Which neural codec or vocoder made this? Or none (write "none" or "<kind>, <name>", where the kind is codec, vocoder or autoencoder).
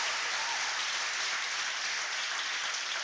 none